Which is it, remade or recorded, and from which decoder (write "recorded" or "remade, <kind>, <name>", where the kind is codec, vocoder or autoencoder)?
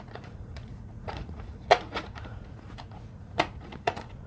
remade, vocoder, Vocos